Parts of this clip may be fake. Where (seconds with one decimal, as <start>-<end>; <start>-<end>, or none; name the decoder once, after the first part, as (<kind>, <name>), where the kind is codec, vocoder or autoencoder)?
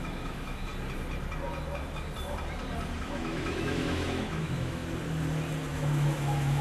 0.0-0.7 (autoencoder, DAC-VAE); 3.0-4.8; 5.7-6.6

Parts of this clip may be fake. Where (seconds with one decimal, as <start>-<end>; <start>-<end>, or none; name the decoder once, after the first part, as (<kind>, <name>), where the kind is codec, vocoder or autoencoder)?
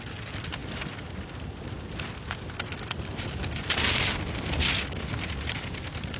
none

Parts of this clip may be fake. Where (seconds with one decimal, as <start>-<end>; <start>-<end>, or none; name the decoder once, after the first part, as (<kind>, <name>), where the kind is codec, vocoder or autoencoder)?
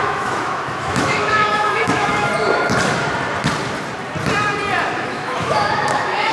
0.0-2.3 (autoencoder, DAC-VAE); 5.0-6.3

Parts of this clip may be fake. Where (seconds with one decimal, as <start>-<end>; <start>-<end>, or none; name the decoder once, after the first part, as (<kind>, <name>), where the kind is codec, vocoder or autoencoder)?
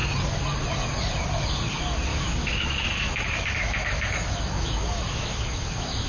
2.1-6.1 (autoencoder, DAC-VAE)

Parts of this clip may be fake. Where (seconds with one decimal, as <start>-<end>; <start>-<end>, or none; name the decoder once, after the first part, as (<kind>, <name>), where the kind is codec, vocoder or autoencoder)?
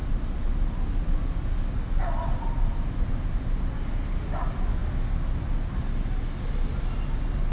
none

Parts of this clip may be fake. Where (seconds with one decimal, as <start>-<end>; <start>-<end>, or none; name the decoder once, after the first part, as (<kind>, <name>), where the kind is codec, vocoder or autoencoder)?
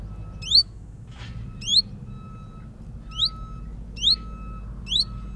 0.6-1.2 (autoencoder, DAC-VAE)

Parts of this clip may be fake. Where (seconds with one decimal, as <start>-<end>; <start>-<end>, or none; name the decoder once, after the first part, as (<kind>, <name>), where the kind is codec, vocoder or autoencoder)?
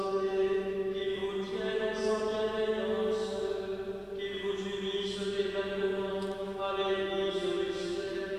0.0-1.2 (autoencoder, DAC-VAE); 6.1-8.4